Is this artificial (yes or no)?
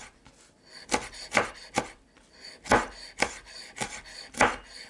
no